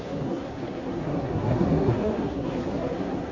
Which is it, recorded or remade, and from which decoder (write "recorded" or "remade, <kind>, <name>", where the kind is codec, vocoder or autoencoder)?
remade, codec, SNAC